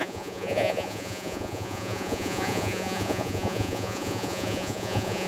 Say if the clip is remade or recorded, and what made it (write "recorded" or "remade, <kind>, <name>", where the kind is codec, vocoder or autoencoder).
remade, vocoder, Vocos